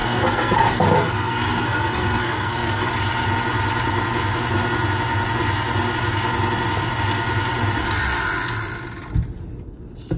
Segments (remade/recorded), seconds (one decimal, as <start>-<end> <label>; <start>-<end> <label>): 0.0-2.9 remade; 2.9-10.2 recorded